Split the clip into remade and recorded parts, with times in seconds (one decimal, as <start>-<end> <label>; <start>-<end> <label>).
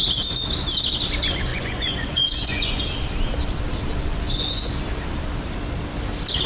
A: 0.0-1.5 recorded; 1.5-2.8 remade; 2.8-4.1 recorded; 4.1-4.7 remade; 4.7-6.5 recorded